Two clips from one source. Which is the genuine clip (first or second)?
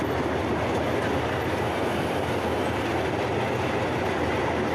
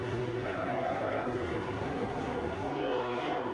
first